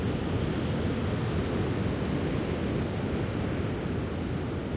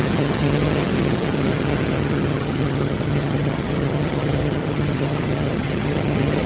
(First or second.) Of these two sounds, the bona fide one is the first